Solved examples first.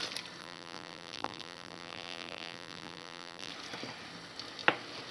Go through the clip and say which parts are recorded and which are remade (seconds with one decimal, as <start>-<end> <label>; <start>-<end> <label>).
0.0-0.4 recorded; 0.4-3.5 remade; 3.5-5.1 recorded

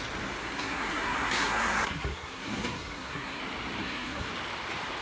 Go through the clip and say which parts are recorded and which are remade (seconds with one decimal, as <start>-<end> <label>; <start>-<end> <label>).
0.0-0.4 recorded; 0.4-3.4 remade; 3.4-3.8 recorded; 3.8-4.3 remade; 4.3-5.0 recorded

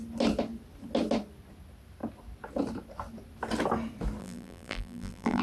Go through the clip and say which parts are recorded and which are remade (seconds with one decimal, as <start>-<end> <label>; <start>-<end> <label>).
0.0-4.2 recorded; 4.2-5.4 remade

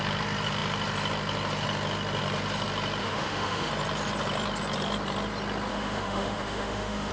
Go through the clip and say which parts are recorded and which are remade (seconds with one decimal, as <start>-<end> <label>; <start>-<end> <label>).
0.0-3.0 recorded; 3.0-3.7 remade; 3.7-5.7 recorded; 5.7-7.1 remade